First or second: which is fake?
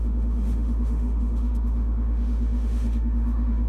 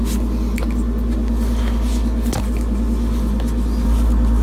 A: first